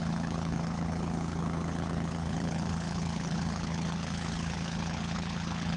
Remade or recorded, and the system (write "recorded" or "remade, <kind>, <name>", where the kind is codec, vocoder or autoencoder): remade, codec, HILCodec